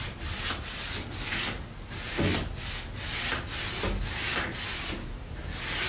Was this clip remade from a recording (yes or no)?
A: no